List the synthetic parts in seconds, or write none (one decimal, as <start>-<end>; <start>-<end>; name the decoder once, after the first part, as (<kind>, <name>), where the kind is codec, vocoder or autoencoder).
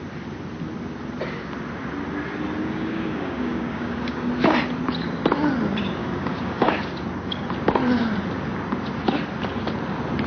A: 2.6-4.3 (codec, DAC); 6.0-6.7